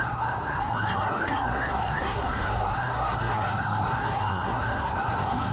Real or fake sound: fake